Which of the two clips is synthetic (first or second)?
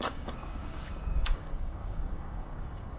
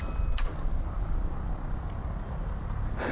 first